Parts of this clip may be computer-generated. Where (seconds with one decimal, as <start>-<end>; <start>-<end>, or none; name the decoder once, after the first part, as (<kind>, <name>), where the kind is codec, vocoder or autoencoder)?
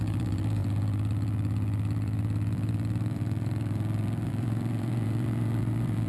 0.0-6.1 (vocoder, BigVGAN v2)